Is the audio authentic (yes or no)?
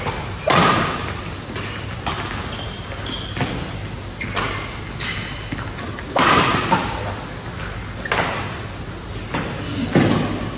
yes